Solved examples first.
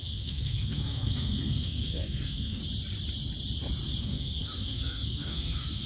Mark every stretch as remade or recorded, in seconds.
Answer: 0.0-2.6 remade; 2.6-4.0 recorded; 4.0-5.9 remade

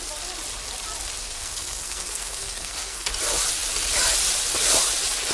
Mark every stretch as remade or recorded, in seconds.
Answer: 0.0-1.2 recorded; 1.2-3.1 remade; 3.1-5.3 recorded

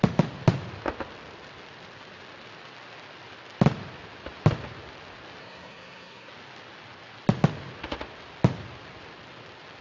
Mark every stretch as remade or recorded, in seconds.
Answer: 0.0-5.4 recorded; 5.4-6.3 remade; 6.3-9.8 recorded